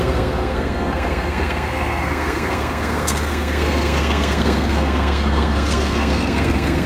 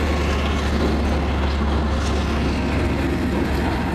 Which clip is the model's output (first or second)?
first